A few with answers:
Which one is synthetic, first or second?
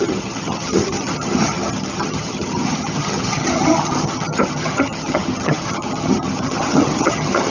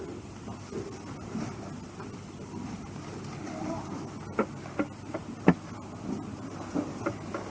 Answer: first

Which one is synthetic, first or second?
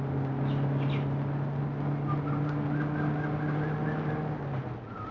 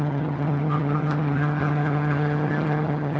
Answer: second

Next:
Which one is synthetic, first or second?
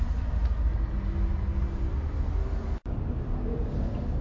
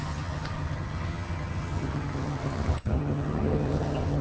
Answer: second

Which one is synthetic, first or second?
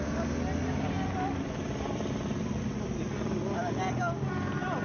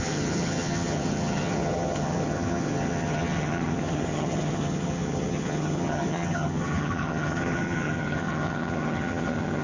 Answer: second